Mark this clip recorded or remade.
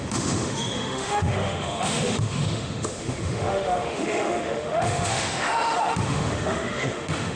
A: remade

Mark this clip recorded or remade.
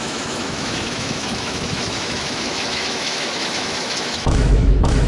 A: remade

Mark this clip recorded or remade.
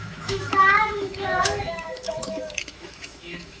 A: remade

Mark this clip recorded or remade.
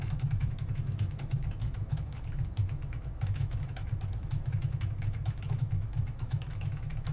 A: remade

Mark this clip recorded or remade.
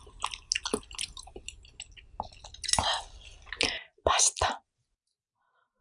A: recorded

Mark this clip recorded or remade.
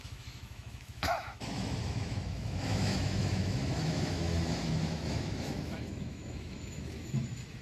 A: remade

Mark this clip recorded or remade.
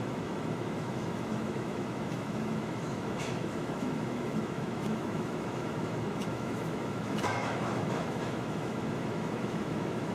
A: remade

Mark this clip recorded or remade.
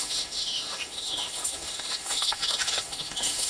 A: remade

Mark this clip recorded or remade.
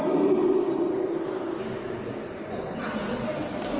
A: recorded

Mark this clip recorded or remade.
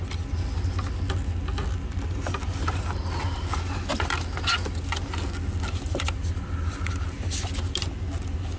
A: recorded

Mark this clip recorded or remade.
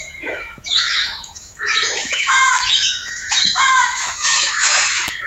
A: remade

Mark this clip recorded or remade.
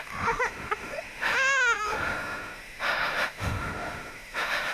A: remade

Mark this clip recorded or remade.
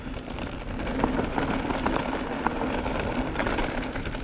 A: recorded